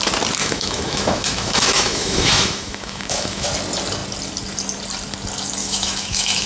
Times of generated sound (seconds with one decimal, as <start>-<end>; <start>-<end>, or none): 0.4-3.5; 5.6-6.5